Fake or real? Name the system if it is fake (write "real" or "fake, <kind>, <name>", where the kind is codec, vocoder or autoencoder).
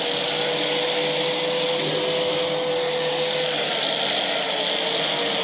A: real